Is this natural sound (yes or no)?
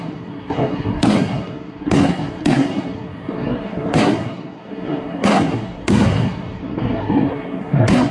no